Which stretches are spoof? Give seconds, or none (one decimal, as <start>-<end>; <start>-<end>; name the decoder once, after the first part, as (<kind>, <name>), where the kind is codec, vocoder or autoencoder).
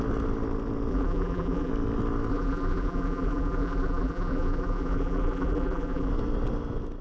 0.9-1.7 (vocoder, BigVGAN v2); 2.3-6.1